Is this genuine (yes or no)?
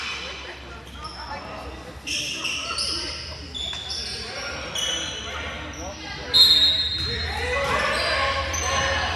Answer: yes